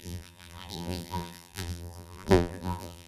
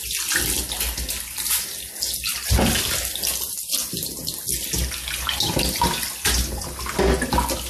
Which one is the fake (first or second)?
first